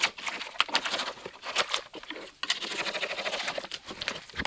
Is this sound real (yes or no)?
yes